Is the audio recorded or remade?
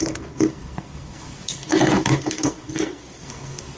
remade